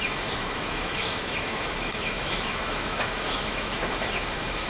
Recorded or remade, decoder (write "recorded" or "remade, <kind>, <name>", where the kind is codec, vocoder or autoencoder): remade, autoencoder, DAC-VAE